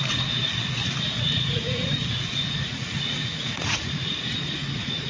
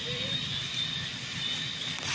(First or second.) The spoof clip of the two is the first